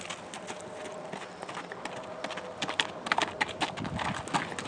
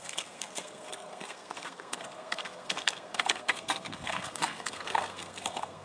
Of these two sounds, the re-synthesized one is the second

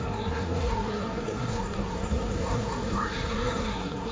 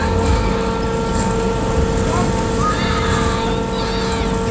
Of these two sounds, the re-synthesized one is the first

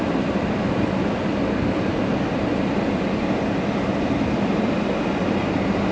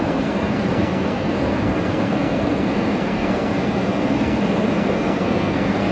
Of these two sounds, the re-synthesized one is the second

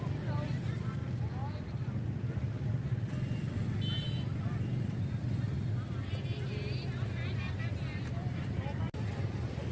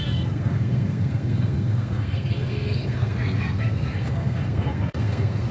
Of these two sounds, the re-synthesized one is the second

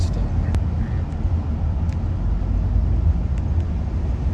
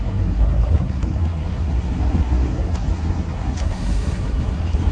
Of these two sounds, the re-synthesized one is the second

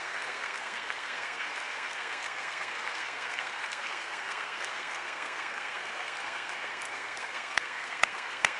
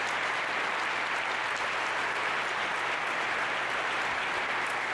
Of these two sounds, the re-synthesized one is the first